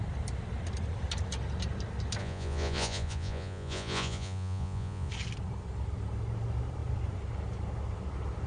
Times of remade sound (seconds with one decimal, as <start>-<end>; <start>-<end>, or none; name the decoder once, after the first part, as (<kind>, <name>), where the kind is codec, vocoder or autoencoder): 2.2-5.1 (vocoder, Vocos)

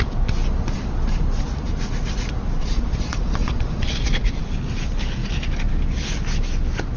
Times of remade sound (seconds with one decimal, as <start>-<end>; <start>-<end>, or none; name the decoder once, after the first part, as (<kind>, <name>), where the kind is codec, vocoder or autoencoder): 2.6-4.4 (vocoder, Vocos)